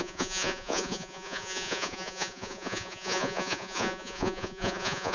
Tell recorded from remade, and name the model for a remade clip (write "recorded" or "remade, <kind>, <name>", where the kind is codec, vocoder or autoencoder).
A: remade, vocoder, Vocos